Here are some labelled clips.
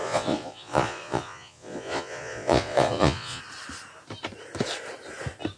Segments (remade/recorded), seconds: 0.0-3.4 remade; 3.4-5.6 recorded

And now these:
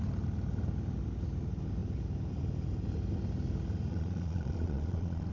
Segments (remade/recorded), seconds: 0.0-3.9 recorded; 3.9-5.3 remade

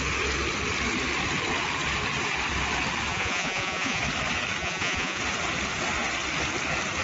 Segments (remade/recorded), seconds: 0.0-3.1 recorded; 3.1-4.0 remade; 4.0-4.6 recorded; 4.6-5.2 remade; 5.2-7.0 recorded

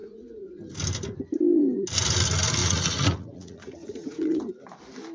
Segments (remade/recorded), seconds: 0.0-0.5 remade; 0.5-2.6 recorded; 2.6-4.4 remade; 4.4-5.1 recorded

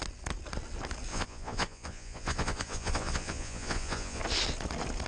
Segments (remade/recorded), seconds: 0.0-1.1 recorded; 1.1-4.2 remade; 4.2-5.1 recorded

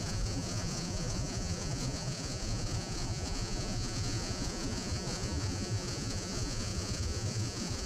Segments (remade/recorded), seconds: 0.0-7.9 remade

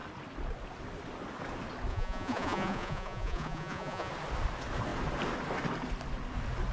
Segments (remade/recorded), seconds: 0.0-1.9 recorded; 1.9-4.1 remade; 4.1-6.7 recorded